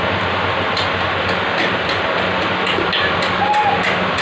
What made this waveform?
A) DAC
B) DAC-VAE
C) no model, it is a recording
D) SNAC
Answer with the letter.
C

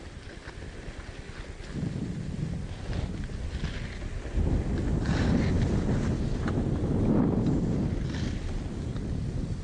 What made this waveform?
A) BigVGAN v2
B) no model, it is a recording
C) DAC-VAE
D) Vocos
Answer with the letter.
B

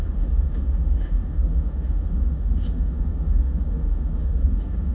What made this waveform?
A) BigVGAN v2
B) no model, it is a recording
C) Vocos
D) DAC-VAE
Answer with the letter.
D